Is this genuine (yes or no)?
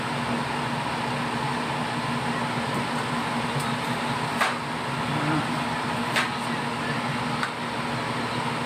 yes